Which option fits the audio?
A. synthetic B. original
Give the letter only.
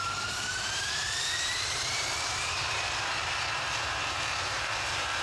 A